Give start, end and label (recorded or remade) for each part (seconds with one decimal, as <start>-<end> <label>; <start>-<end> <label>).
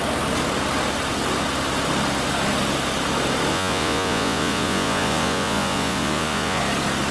0.0-3.5 recorded; 3.5-6.6 remade; 6.6-7.1 recorded